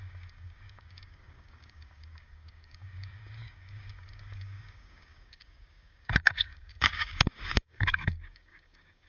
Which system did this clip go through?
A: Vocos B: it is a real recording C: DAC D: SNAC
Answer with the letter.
C